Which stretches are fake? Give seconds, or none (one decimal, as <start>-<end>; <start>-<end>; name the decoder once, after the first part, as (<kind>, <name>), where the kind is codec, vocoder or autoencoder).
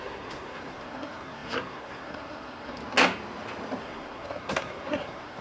0.0-2.8 (codec, SNAC); 3.8-5.4